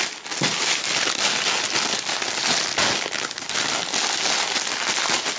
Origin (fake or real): real